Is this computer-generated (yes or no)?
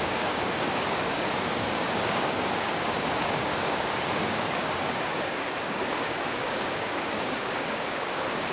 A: yes